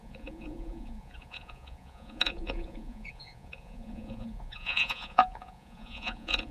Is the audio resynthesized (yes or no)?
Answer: yes